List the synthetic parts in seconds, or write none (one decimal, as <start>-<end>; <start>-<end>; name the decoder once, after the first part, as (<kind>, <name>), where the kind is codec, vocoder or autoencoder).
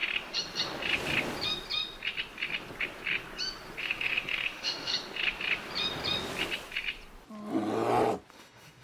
3.8-4.9 (autoencoder, DAC-VAE); 8.3-8.8